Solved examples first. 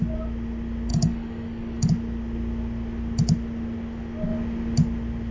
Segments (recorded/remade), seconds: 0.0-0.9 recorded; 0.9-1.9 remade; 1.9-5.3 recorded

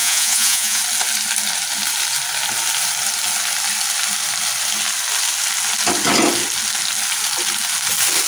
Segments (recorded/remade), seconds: 0.0-0.8 remade; 0.8-8.3 recorded